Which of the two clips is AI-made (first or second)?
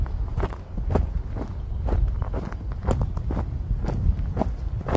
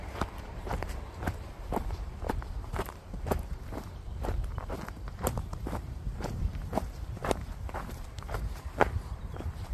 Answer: second